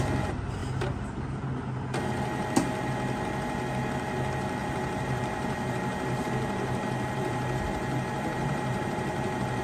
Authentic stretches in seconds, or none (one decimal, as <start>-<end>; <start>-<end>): 0.0-4.6